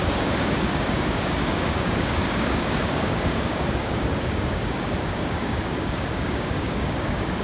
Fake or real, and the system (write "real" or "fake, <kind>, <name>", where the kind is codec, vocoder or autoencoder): fake, codec, DAC